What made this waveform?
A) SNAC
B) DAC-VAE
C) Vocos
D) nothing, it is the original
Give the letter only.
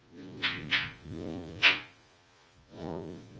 C